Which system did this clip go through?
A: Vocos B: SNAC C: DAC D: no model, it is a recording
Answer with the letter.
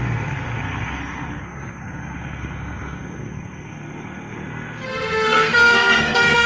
B